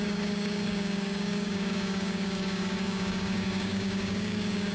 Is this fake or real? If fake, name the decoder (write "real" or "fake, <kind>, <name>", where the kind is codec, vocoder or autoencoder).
fake, codec, DAC